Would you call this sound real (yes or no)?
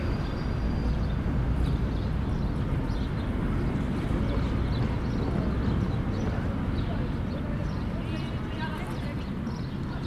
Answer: yes